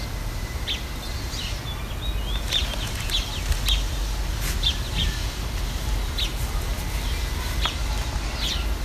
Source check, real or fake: real